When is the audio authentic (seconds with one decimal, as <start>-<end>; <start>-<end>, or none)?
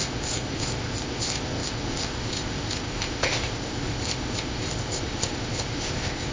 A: none